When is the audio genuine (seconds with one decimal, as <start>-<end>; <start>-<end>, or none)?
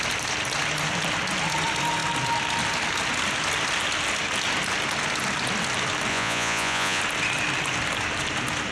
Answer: 0.0-6.1; 7.0-8.7